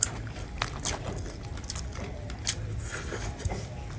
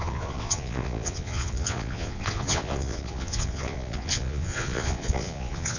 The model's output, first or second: second